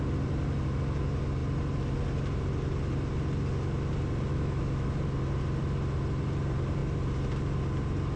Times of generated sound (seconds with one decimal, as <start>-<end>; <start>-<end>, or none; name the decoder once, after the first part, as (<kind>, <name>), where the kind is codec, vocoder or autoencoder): 4.3-4.9 (autoencoder, DAC-VAE)

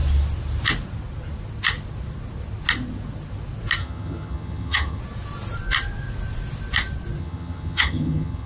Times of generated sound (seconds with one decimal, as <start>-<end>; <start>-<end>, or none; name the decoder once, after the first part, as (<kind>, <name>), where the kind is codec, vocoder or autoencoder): 3.8-5.0 (vocoder, HiFi-GAN); 7.2-8.5

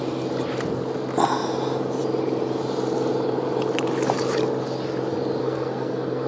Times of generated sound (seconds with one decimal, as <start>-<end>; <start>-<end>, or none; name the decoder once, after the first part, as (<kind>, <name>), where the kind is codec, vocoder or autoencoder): 5.4-6.3 (codec, SNAC)

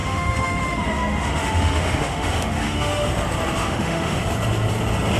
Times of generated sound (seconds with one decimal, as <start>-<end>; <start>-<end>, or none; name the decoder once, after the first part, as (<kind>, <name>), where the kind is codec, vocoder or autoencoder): 0.0-3.1 (autoencoder, DAC-VAE); 3.6-4.2